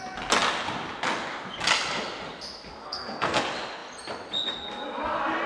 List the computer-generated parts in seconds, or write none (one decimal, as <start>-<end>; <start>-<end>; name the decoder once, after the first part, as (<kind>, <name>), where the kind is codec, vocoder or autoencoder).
2.8-3.4 (codec, SNAC)

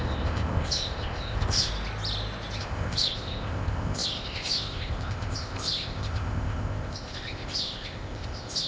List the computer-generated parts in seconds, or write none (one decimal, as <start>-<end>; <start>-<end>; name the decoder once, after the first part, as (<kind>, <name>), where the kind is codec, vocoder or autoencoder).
0.0-1.7 (codec, ZipCodec); 2.6-8.7

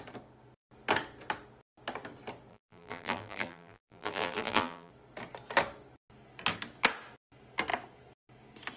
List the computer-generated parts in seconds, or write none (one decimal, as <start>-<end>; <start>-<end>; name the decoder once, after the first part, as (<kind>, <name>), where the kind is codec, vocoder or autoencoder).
2.5-4.9 (vocoder, BigVGAN v2)